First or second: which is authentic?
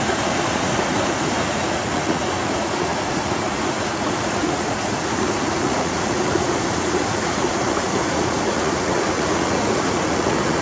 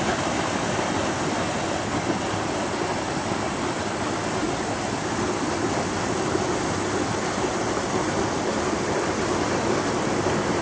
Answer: second